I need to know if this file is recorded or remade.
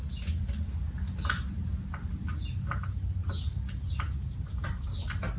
recorded